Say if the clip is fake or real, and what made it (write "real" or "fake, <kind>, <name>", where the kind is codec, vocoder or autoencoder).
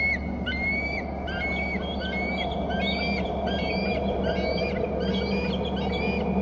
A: real